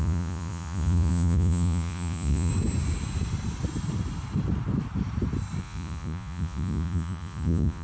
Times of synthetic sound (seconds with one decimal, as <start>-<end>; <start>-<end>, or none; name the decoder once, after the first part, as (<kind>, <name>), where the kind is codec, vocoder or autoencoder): 0.0-2.5 (vocoder, Vocos); 5.6-7.8